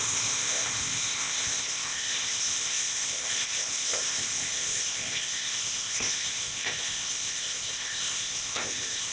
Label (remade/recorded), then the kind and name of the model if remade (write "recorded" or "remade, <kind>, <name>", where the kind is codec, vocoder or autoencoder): remade, codec, ZipCodec